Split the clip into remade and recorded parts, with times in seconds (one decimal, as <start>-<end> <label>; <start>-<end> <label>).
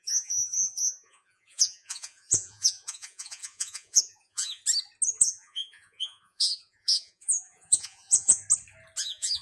0.0-4.6 remade; 4.6-5.2 recorded; 5.2-8.4 remade; 8.4-9.0 recorded; 9.0-9.4 remade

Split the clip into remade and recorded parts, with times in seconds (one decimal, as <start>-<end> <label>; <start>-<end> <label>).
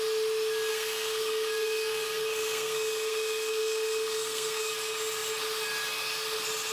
0.0-0.7 recorded; 0.7-4.7 remade; 4.7-6.7 recorded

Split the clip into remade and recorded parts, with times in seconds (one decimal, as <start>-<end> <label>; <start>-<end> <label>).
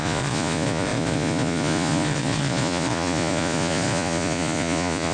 0.0-5.1 remade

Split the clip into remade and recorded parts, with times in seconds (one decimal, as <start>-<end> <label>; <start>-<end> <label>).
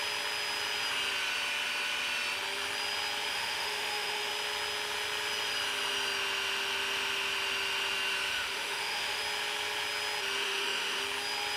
0.0-3.3 recorded; 3.3-4.3 remade; 4.3-8.3 recorded; 8.3-9.2 remade; 9.2-10.4 recorded; 10.4-11.0 remade; 11.0-11.6 recorded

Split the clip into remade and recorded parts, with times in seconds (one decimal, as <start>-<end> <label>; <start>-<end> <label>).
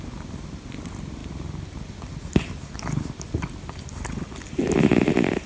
0.0-5.5 recorded